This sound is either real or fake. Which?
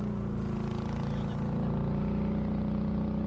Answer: real